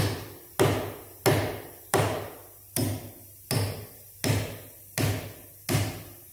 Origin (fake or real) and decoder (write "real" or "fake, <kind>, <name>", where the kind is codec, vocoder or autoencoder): real